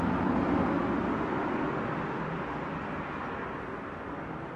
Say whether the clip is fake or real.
real